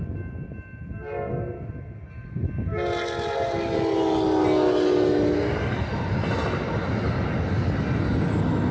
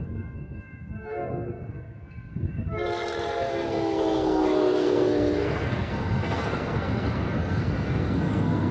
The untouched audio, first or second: first